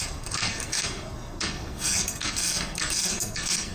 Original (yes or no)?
no